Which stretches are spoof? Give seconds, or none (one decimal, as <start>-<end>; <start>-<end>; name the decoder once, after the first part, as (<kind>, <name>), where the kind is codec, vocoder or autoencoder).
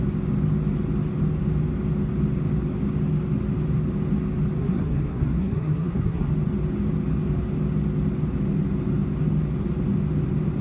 4.6-6.3 (codec, SNAC)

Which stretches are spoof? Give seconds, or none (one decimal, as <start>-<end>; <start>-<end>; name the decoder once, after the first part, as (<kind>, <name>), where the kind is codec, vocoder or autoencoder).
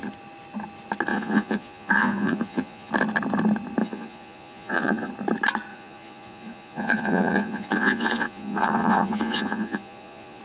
1.1-2.9 (vocoder, Vocos); 3.8-5.1; 5.7-10.4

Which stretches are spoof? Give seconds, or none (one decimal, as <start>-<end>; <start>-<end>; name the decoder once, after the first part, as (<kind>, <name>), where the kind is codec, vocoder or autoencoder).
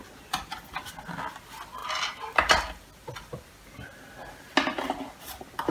none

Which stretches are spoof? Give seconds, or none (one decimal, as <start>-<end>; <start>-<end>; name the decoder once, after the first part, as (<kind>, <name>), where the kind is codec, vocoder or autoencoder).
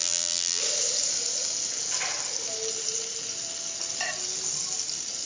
0.0-0.6 (vocoder, BigVGAN v2)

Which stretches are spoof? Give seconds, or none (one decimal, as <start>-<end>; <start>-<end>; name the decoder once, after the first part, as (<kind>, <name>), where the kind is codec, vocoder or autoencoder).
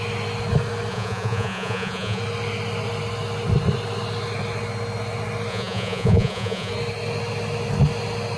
0.9-2.2 (vocoder, Vocos); 5.5-6.7